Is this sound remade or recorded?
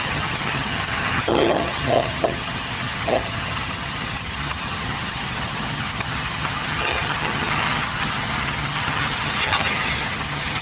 remade